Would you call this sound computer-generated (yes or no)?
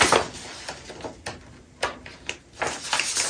no